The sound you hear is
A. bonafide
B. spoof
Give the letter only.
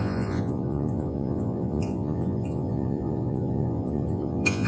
B